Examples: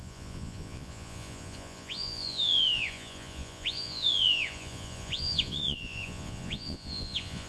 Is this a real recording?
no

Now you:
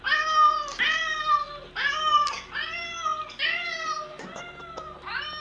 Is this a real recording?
yes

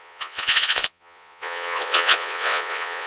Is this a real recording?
no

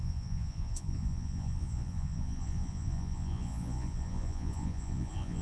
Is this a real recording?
no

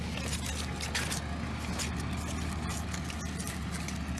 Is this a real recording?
yes